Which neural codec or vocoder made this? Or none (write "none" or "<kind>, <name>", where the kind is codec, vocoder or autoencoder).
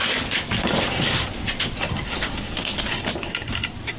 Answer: none